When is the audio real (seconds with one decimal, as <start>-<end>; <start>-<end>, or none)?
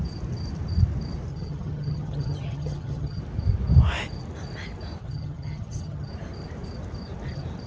0.0-1.3; 3.2-5.0; 6.1-7.7